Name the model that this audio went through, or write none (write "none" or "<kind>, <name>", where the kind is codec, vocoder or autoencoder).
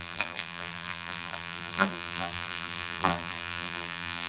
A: vocoder, BigVGAN v2